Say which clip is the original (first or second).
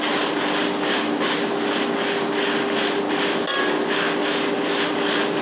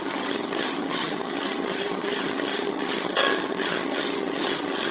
first